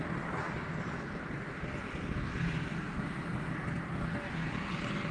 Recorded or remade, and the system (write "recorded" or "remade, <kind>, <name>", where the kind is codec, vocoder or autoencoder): recorded